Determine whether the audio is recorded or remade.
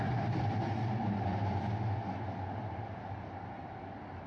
recorded